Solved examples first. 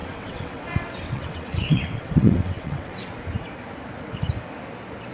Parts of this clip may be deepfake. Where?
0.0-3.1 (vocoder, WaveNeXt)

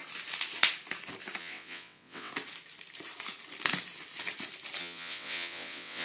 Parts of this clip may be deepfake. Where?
1.4-2.3 (vocoder, WaveNeXt); 4.8-6.0

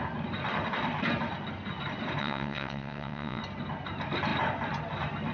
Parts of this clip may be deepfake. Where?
2.2-3.4 (vocoder, WaveNeXt)

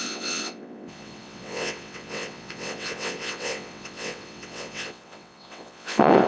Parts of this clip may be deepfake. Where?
0.0-6.3 (vocoder, WaveNeXt)

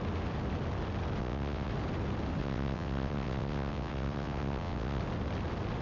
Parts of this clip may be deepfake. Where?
1.2-1.7 (vocoder, WaveNeXt); 2.4-5.0

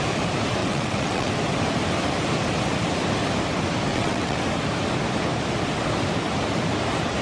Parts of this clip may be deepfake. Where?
0.6-1.3 (vocoder, WaveNeXt); 3.9-4.4